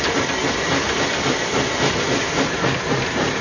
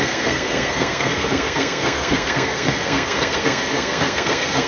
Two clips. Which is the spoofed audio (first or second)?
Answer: second